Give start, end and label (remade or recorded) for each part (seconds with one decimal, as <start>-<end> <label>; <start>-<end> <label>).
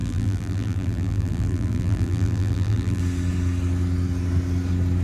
0.0-3.0 remade; 3.0-5.0 recorded